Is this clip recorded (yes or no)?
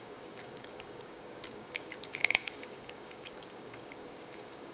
no